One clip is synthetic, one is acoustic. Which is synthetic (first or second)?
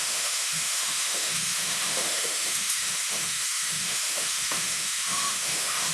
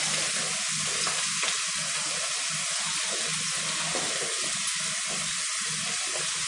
first